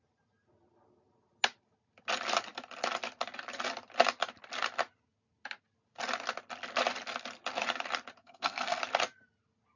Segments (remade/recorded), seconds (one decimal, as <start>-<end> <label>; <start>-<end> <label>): 0.0-8.2 recorded; 8.2-8.8 remade; 8.8-9.8 recorded